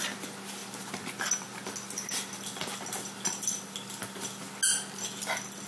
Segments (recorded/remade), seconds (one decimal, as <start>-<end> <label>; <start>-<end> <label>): 0.0-5.7 recorded